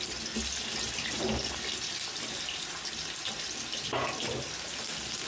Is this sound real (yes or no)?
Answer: yes